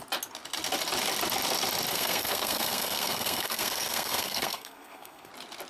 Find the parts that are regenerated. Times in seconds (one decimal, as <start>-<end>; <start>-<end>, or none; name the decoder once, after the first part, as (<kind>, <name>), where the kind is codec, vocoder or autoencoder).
1.9-5.3 (codec, SNAC)